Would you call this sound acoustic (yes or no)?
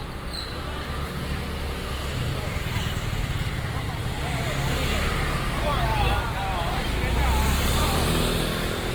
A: yes